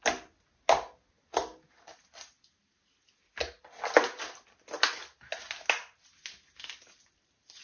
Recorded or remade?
recorded